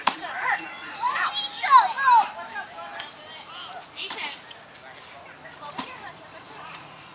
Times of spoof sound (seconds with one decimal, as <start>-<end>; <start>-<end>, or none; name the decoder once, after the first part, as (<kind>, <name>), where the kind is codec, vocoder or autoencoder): 0.0-1.3 (vocoder, Vocos); 5.6-7.1

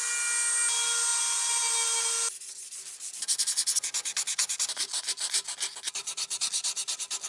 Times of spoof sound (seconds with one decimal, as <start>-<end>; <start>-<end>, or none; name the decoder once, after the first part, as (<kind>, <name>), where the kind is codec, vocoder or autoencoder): none

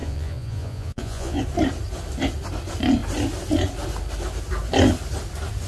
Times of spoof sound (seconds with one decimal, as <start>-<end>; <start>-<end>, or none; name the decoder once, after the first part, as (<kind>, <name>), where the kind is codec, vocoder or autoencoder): 0.0-1.4 (vocoder, Vocos)

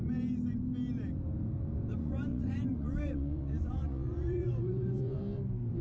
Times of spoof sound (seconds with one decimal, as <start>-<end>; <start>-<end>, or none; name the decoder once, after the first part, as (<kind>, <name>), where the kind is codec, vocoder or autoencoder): 1.9-5.2 (vocoder, Vocos)